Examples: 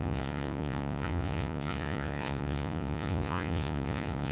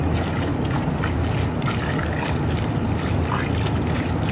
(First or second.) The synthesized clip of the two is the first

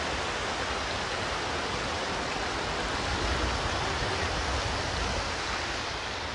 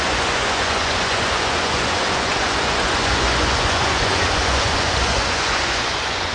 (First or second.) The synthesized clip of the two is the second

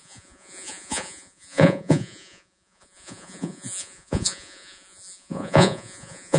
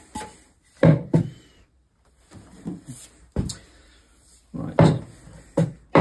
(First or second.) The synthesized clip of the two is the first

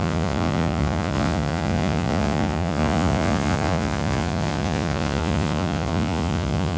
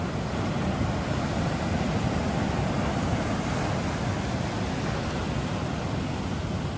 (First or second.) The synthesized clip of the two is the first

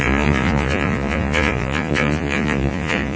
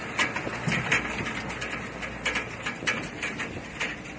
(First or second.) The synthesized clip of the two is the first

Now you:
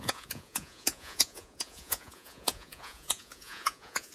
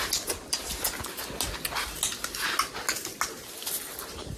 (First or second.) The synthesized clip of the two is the first